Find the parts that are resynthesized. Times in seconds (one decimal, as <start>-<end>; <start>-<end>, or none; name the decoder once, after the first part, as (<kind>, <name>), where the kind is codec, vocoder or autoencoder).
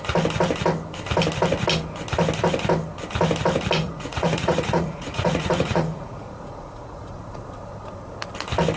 3.8-7.2 (vocoder, Vocos)